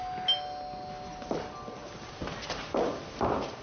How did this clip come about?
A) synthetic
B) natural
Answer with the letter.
B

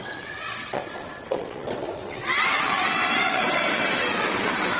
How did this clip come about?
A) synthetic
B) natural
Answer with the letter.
A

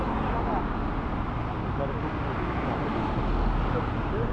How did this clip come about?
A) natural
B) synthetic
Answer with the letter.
A